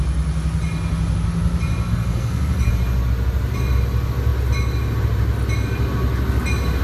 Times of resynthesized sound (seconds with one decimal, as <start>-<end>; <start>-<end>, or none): 1.9-2.7